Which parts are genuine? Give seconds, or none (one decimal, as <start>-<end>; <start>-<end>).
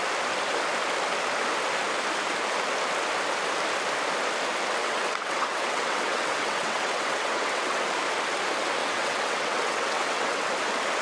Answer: 0.0-4.8; 7.8-8.8; 10.5-11.0